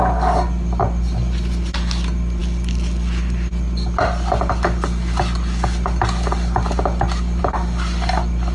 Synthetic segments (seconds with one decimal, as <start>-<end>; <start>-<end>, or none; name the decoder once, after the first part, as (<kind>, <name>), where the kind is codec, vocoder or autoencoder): none